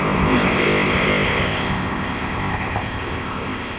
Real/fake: fake